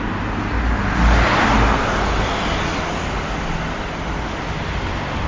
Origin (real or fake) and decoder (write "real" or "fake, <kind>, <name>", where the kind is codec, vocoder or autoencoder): real